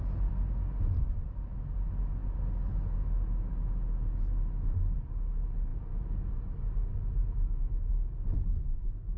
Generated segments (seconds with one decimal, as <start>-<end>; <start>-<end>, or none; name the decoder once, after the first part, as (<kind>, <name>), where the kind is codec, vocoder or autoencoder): 7.2-7.9 (autoencoder, DAC-VAE)